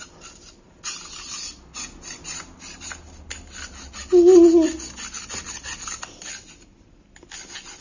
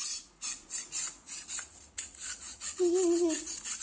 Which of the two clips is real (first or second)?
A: first